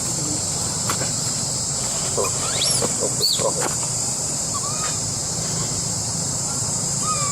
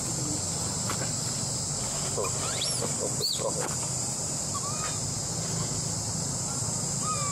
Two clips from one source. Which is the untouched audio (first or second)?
second